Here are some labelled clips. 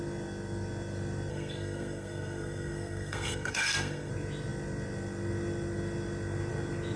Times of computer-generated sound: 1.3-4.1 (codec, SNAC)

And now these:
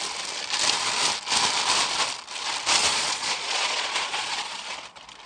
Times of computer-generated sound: 2.8-4.6 (vocoder, Vocos)

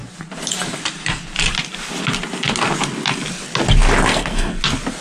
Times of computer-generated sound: 4.1-4.6 (codec, SNAC)

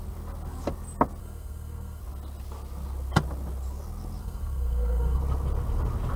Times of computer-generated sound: 1.2-2.0 (codec, SNAC); 4.2-5.2

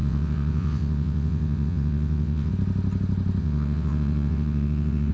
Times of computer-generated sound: 0.0-2.5 (vocoder, WaveNeXt); 3.4-5.1

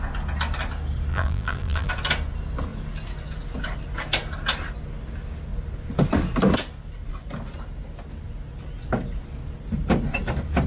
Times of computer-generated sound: 1.1-1.9 (vocoder, BigVGAN v2)

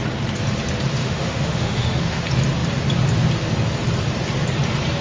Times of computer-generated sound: 1.0-2.2 (autoencoder, DAC-VAE)